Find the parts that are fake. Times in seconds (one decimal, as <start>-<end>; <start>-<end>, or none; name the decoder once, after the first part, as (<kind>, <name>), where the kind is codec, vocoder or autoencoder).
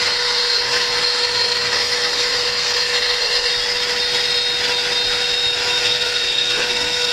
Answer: 0.0-3.5 (codec, SNAC); 5.8-7.1